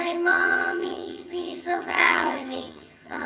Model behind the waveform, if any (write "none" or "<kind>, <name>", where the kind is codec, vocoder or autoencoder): vocoder, HiFi-GAN